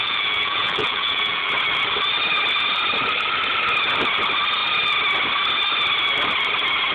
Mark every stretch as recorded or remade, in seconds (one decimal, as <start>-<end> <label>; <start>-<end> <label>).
0.0-1.5 remade; 1.5-6.9 recorded